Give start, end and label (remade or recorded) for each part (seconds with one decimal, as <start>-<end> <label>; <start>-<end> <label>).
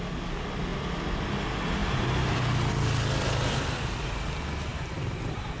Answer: 0.0-1.8 recorded; 1.8-2.4 remade; 2.4-4.7 recorded; 4.7-5.6 remade